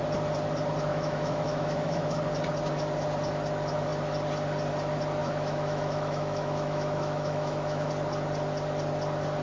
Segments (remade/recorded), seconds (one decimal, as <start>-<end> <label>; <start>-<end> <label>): 0.0-0.9 recorded; 0.9-2.2 remade; 2.2-5.2 recorded; 5.2-7.9 remade; 7.9-9.4 recorded